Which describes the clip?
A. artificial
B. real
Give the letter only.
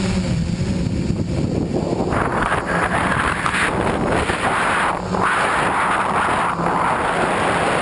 B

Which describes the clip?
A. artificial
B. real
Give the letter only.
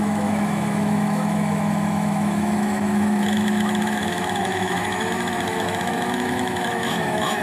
A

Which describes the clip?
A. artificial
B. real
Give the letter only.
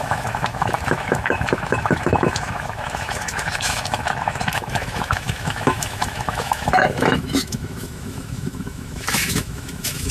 A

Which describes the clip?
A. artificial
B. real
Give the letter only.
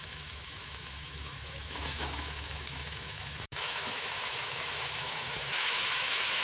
A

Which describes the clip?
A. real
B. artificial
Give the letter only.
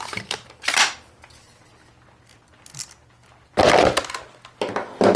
A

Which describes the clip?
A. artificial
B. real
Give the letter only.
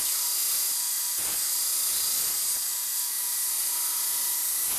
B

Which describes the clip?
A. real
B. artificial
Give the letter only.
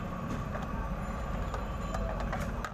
A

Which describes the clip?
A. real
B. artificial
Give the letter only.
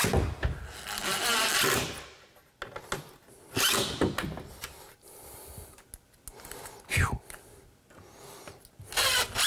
A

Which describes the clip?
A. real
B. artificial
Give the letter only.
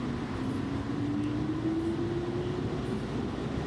A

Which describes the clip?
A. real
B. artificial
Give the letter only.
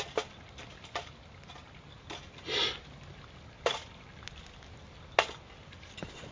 A